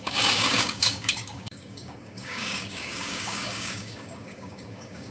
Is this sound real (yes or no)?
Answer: no